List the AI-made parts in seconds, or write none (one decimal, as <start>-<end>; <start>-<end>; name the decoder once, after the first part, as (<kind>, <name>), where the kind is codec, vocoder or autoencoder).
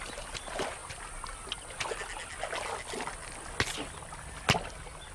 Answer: none